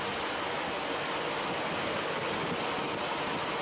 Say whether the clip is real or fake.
real